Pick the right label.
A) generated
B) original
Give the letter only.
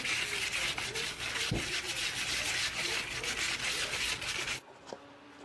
A